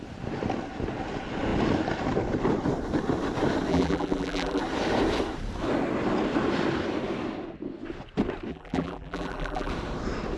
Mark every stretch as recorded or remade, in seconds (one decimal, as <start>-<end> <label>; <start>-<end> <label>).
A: 0.0-3.7 recorded; 3.7-4.6 remade; 4.6-8.5 recorded; 8.5-9.7 remade; 9.7-10.4 recorded